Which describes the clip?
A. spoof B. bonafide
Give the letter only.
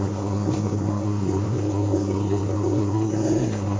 A